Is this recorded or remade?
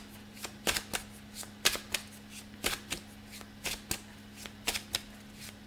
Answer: recorded